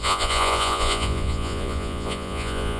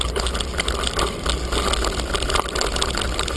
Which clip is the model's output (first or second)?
first